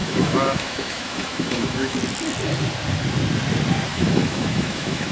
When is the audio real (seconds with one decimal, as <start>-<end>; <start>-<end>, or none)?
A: 2.0-3.9